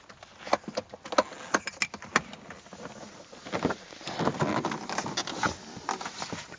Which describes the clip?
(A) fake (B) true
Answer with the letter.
B